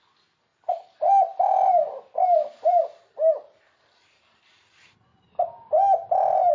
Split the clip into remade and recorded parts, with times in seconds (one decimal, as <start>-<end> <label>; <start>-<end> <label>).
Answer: 0.0-0.5 recorded; 0.5-4.4 remade; 4.4-6.5 recorded